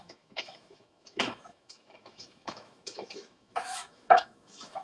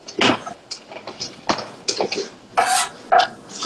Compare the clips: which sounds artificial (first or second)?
first